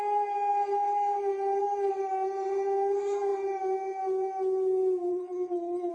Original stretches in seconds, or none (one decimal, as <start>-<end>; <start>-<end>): 0.0-5.1

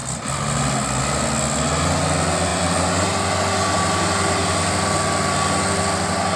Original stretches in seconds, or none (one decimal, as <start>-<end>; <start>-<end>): 0.0-6.4

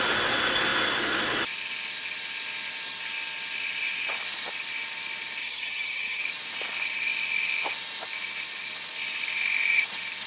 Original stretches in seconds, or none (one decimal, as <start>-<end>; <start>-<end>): 0.0-5.4; 6.2-10.3

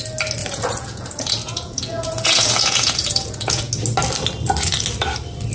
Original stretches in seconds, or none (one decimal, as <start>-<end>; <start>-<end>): 0.0-0.4; 3.7-5.5

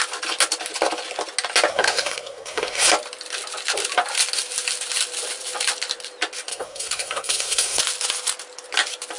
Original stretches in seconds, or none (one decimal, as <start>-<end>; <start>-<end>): 0.0-1.7; 2.9-6.5; 7.8-9.2